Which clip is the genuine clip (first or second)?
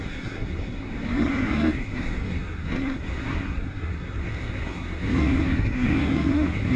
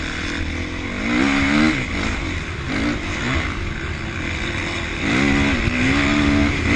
second